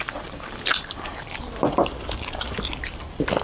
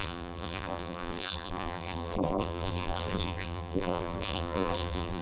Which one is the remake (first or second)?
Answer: second